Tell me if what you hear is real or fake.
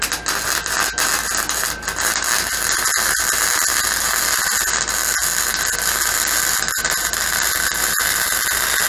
real